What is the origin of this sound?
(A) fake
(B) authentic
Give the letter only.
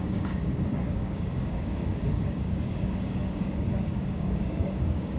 A